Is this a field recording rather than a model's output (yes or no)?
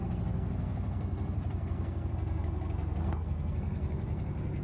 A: no